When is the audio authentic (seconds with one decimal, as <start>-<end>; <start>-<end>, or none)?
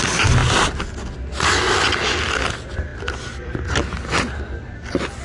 0.4-2.3